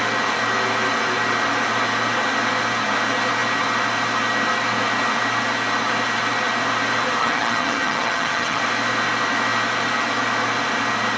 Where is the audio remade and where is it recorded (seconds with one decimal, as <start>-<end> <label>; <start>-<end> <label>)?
0.0-7.2 recorded; 7.2-8.6 remade; 8.6-11.2 recorded